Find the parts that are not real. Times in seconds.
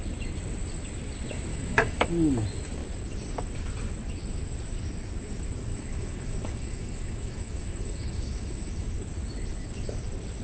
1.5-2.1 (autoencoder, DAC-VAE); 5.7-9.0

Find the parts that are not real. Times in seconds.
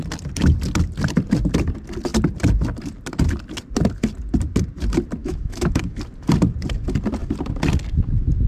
5.2-6.0 (autoencoder, DAC-VAE)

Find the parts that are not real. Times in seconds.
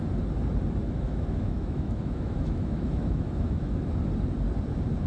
0.8-3.9 (autoencoder, DAC-VAE)